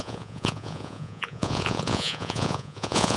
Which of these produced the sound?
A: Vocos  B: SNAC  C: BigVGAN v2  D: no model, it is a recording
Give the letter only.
A